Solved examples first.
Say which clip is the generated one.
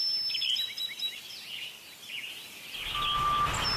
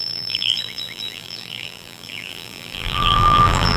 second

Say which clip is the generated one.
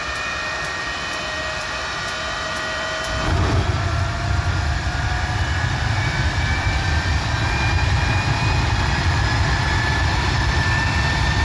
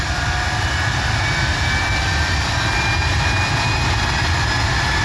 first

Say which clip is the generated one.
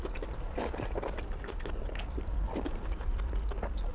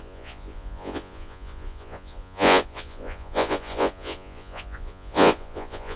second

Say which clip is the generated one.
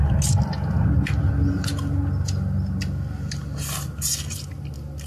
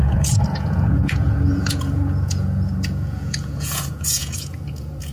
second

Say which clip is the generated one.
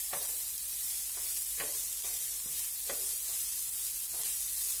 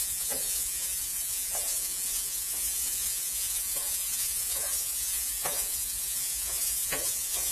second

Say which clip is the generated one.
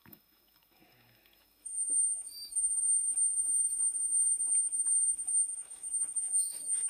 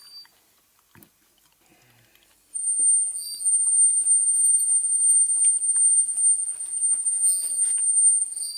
first